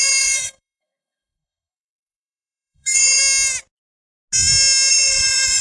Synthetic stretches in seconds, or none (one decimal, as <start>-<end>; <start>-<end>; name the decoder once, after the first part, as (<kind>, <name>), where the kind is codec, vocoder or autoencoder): 0.0-3.2 (autoencoder, DAC-VAE); 4.9-5.6